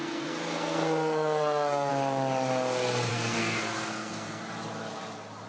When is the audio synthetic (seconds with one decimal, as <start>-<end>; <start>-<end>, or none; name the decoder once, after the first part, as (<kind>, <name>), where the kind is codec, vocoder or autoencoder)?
0.0-1.9 (codec, SNAC); 3.1-4.4